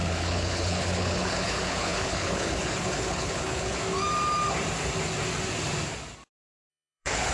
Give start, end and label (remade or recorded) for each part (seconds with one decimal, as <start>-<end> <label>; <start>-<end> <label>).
0.0-3.8 remade; 3.8-6.7 recorded; 6.7-7.3 remade